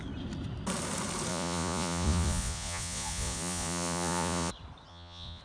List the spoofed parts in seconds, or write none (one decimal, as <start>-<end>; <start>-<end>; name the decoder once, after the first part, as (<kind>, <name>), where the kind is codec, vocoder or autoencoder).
1.3-4.5 (vocoder, Vocos); 4.9-5.4